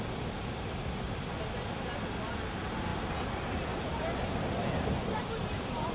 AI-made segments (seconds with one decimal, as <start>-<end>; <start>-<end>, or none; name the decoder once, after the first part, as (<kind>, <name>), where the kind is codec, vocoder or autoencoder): none